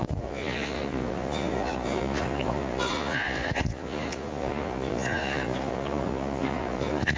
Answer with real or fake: fake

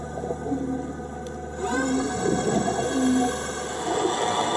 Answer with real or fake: real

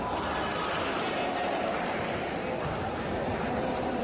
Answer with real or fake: real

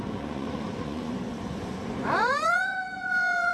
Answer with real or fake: fake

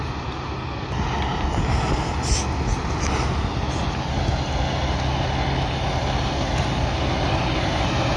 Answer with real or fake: real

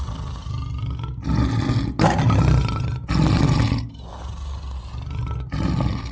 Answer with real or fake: real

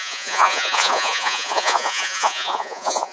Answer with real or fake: fake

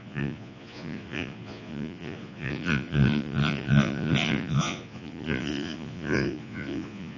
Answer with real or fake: fake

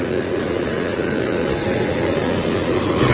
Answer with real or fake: fake